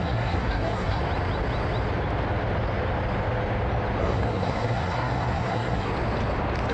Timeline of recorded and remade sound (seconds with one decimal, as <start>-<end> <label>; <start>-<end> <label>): 0.0-1.0 remade; 1.0-4.0 recorded; 4.0-5.9 remade; 5.9-6.7 recorded